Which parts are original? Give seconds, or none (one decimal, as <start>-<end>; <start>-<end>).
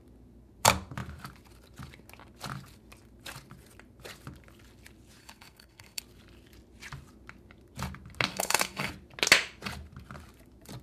0.0-5.2; 6.0-8.3; 8.9-10.8